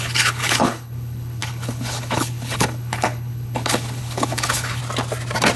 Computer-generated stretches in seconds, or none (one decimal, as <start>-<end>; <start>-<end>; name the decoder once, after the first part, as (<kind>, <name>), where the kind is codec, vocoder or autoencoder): 0.0-4.8 (codec, HILCodec)